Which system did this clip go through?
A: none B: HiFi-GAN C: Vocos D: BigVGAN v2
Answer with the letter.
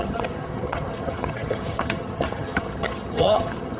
B